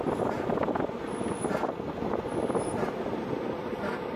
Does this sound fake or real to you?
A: real